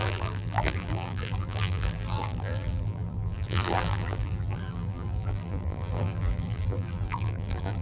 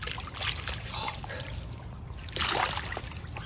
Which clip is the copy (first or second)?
first